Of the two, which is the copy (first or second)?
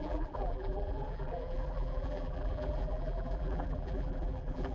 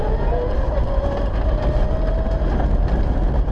first